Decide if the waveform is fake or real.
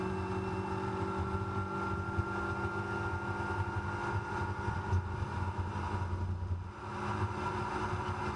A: real